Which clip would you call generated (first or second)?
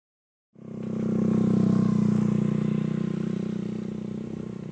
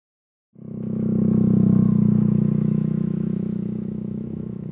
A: second